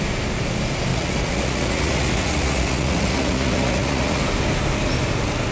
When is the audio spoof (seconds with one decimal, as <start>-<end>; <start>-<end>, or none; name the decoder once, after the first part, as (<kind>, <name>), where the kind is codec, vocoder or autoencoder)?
0.9-4.2 (vocoder, Vocos)